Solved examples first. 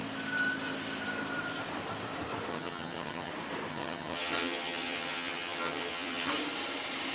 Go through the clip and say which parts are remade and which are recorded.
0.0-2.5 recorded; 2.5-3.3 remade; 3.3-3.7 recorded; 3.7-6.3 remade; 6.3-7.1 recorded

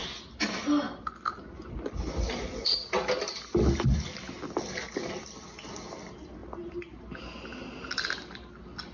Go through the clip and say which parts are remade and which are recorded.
0.0-8.9 recorded